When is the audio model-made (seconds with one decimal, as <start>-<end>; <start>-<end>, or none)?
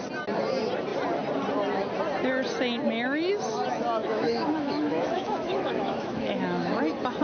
4.0-6.8